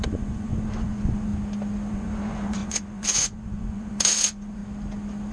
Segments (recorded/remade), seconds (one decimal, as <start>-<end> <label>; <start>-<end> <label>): 0.0-1.3 remade; 1.3-1.9 recorded; 1.9-4.6 remade; 4.6-5.3 recorded